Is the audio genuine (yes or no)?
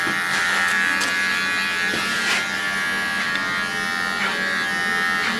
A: yes